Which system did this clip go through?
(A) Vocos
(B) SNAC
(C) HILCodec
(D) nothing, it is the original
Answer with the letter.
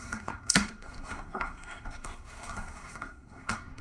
B